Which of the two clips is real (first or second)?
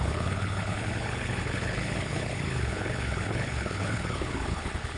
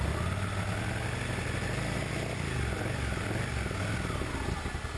second